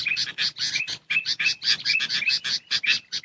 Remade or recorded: recorded